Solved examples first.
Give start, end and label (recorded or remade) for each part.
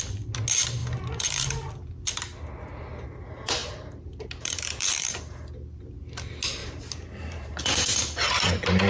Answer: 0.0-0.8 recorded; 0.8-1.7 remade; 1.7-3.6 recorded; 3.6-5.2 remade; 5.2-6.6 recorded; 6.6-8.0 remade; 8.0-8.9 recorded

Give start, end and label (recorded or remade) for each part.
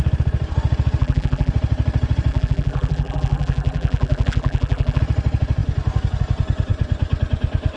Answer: 0.0-1.0 recorded; 1.0-1.5 remade; 1.5-2.3 recorded; 2.3-5.0 remade; 5.0-7.8 recorded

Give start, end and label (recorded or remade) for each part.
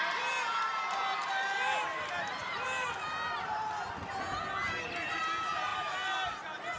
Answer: 0.0-2.4 recorded; 2.4-3.9 remade; 3.9-6.8 recorded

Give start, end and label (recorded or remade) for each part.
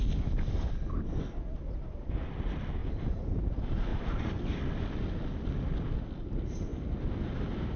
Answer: 0.0-3.9 recorded; 3.9-4.6 remade; 4.6-7.8 recorded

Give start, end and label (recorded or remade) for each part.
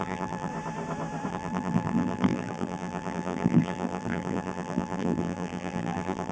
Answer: 0.0-0.5 remade; 0.5-1.3 recorded; 1.3-6.3 remade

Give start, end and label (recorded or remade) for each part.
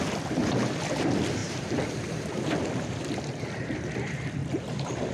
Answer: 0.0-1.4 recorded; 1.4-2.2 remade; 2.2-4.4 recorded; 4.4-5.1 remade